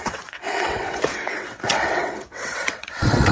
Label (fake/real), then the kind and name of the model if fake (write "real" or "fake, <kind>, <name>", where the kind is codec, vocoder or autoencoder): fake, vocoder, WaveNeXt